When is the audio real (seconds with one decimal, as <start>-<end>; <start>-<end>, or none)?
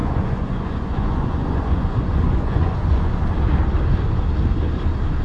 3.1-5.2